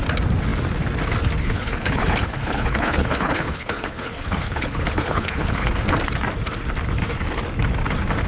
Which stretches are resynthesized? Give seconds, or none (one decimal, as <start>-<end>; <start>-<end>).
1.4-5.7

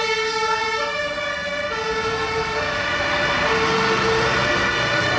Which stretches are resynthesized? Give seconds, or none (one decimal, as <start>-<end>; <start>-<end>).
none

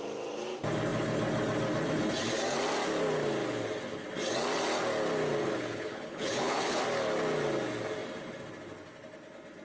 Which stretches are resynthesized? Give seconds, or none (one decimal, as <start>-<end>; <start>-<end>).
5.4-6.8

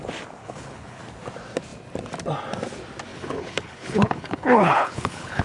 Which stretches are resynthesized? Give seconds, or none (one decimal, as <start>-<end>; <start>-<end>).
0.4-1.0; 3.1-5.4

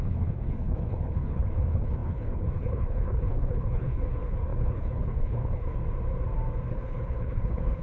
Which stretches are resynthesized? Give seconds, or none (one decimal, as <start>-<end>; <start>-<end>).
0.0-5.8; 6.7-7.8

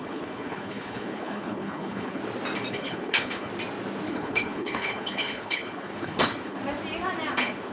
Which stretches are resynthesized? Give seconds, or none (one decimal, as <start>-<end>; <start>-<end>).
0.0-2.2; 2.7-3.5; 4.1-6.6; 7.3-7.7

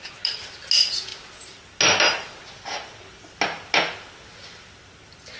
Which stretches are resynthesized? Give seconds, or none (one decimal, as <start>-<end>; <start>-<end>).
none